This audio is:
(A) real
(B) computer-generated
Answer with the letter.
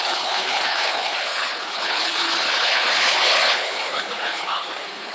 B